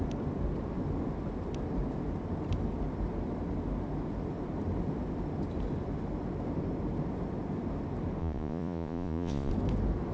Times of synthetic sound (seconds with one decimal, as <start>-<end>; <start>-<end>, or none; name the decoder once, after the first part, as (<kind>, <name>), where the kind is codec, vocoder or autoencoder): 8.2-9.5 (vocoder, Vocos)